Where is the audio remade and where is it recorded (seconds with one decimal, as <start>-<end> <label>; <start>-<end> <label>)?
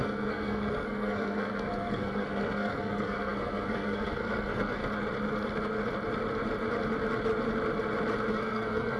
0.0-4.8 remade; 4.8-8.3 recorded; 8.3-9.0 remade